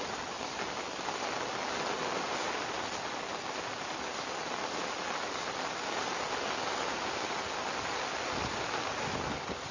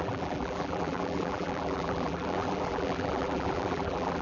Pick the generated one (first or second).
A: second